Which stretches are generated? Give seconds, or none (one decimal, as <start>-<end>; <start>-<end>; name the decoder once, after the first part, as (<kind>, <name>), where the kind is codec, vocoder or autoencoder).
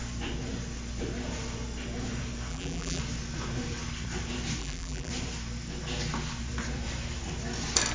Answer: 2.5-3.0 (vocoder, BigVGAN v2); 4.6-5.1